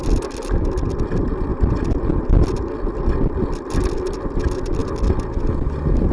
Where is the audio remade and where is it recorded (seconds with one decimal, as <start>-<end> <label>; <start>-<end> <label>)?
0.0-6.1 recorded